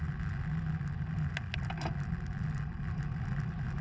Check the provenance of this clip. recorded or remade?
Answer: recorded